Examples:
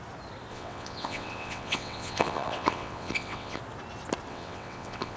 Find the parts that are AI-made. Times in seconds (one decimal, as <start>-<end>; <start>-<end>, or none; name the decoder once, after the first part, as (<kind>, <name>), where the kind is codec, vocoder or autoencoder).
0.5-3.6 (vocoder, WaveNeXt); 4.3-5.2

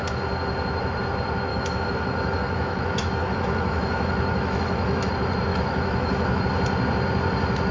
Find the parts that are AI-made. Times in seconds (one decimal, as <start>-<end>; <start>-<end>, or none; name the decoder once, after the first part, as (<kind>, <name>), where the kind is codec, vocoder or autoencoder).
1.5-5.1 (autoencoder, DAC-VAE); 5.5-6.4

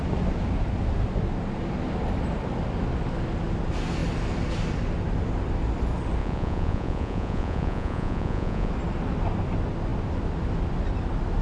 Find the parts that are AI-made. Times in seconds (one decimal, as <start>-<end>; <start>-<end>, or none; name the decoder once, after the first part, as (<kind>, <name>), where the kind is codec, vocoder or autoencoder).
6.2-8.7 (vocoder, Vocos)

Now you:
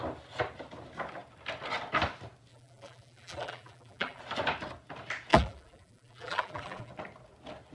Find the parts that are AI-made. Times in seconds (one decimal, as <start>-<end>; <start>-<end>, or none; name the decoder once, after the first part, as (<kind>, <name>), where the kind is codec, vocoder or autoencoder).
2.5-4.2 (vocoder, BigVGAN v2); 5.3-6.9